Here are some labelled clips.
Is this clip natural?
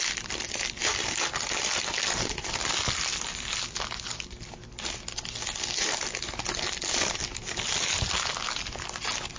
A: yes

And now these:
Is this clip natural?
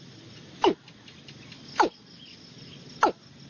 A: yes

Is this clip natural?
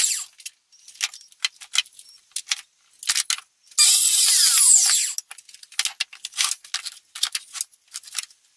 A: yes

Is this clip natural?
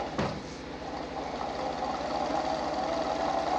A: yes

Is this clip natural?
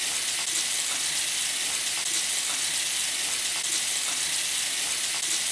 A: yes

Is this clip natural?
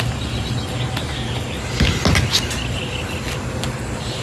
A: yes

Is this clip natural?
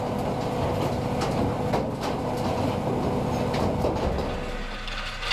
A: yes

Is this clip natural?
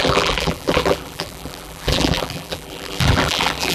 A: no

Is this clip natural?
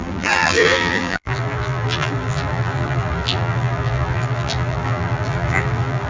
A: no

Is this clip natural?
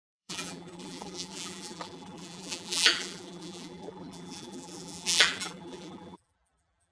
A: no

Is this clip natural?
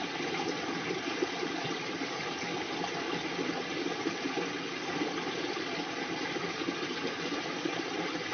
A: no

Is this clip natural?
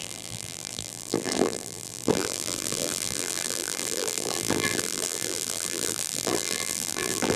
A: no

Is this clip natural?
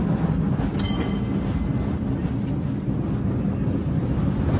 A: yes